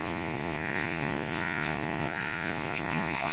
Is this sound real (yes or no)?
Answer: no